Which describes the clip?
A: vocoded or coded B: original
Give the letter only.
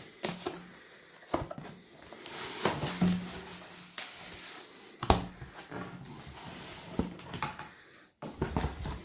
B